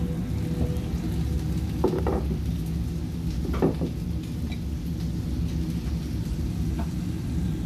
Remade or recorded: recorded